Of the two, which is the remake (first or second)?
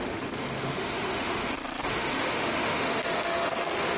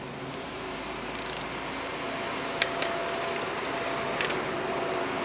first